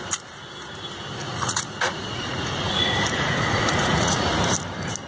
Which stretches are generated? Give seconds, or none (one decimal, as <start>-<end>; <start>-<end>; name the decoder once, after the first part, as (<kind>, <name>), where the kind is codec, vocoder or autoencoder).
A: 1.2-4.3 (vocoder, Vocos)